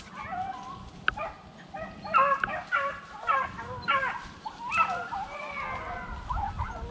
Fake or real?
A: real